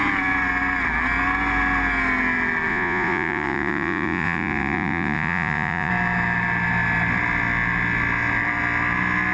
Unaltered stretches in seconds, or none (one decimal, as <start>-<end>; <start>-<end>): 0.0-2.7; 5.9-9.3